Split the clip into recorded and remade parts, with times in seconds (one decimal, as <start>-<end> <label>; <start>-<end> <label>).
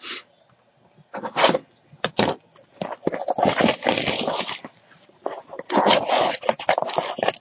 0.0-7.4 recorded